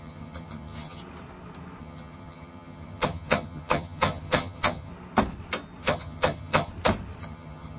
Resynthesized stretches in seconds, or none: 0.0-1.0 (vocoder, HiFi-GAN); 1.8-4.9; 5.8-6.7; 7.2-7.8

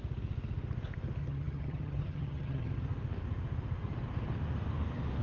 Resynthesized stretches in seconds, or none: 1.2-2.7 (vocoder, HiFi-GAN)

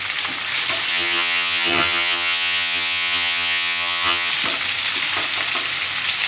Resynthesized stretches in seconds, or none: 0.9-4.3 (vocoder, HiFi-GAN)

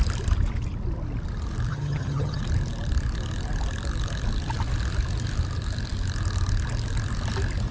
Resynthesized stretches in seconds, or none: 1.7-2.4 (vocoder, HiFi-GAN)

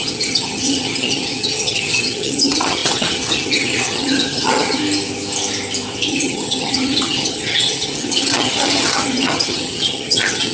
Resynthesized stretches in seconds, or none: 0.0-4.8 (vocoder, HiFi-GAN); 6.1-10.5

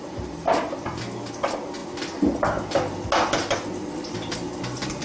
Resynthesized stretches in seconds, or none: none